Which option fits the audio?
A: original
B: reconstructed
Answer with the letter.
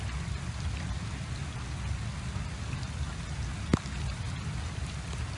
A